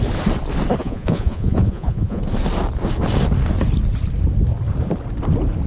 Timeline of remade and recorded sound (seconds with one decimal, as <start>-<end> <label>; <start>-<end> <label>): 0.0-0.8 recorded; 0.8-2.2 remade; 2.2-5.7 recorded